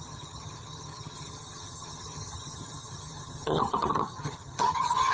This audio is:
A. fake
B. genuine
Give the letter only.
A